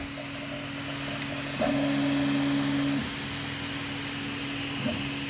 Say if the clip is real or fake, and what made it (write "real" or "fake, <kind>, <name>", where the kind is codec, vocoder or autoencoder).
real